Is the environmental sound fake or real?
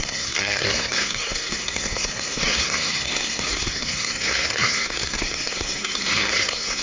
fake